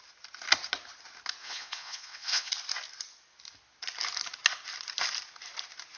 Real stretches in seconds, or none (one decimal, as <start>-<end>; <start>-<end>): 0.0-1.4; 2.5-6.0